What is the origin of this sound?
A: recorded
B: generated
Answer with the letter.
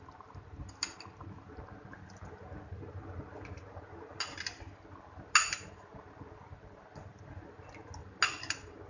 A